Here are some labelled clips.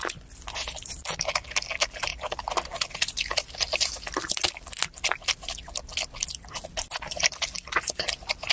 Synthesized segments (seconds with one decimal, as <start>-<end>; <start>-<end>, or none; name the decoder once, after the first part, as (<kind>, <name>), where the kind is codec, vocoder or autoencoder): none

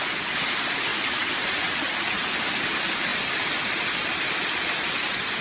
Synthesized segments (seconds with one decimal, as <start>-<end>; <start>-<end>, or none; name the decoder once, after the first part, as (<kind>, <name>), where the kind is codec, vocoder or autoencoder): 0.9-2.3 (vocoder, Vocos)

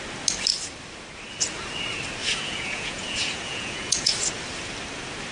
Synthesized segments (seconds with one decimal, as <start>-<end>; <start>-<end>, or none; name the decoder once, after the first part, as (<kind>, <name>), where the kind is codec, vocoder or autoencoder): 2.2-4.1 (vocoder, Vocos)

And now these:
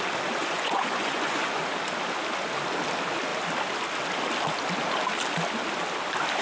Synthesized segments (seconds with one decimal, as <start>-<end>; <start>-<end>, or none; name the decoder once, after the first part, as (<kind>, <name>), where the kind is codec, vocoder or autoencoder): 0.4-1.6 (vocoder, Vocos)

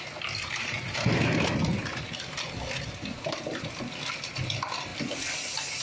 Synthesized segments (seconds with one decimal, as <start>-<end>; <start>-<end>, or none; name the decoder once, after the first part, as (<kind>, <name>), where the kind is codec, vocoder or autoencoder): none